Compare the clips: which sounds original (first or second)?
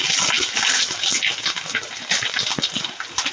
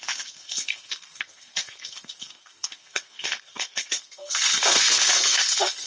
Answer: first